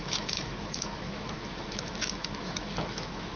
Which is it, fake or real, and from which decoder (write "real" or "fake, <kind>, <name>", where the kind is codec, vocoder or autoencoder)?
fake, autoencoder, DAC-VAE